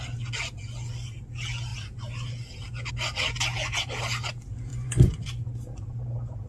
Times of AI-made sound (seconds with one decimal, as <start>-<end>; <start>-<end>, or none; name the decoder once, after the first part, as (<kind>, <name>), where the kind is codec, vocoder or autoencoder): 4.7-5.2 (vocoder, Vocos)